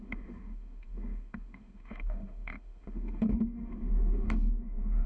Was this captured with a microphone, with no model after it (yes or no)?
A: no